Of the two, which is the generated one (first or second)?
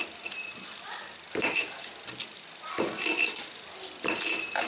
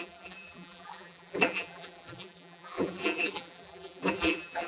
second